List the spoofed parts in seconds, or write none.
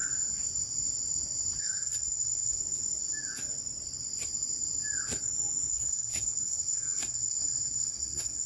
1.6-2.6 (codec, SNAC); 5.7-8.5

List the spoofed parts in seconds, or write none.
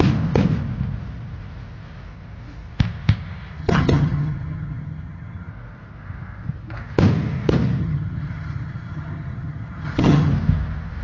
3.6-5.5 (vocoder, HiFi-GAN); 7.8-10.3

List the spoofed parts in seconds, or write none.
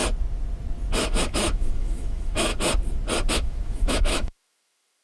1.0-2.5 (autoencoder, DAC-VAE); 3.3-5.0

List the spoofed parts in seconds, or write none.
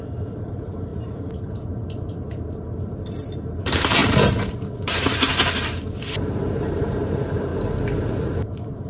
0.0-7.5 (vocoder, BigVGAN v2); 8.1-8.9